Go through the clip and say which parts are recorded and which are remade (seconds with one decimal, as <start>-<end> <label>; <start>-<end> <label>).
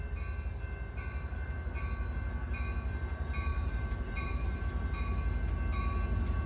0.0-3.5 recorded; 3.5-4.6 remade; 4.6-6.5 recorded